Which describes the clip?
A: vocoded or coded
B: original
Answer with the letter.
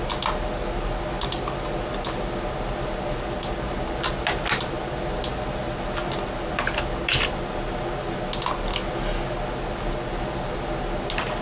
B